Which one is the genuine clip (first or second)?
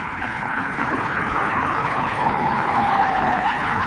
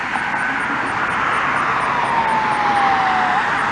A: second